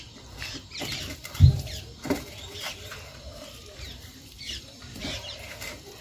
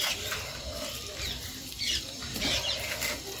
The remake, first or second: first